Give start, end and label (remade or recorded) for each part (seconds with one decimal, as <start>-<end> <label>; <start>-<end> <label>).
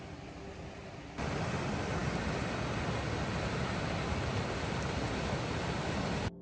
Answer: 0.0-6.4 recorded